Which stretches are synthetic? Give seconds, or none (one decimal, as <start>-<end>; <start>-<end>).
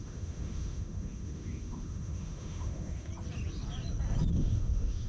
0.0-3.1; 4.3-5.1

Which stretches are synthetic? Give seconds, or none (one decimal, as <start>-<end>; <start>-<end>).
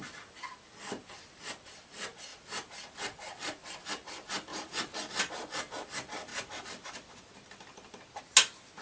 4.5-5.2; 6.3-8.2